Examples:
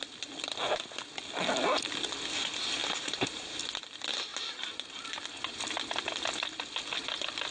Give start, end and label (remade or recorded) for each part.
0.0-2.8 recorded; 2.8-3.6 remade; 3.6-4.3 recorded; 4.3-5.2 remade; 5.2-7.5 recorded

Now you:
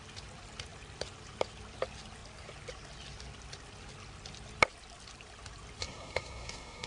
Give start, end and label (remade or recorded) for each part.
0.0-5.8 recorded; 5.8-6.9 remade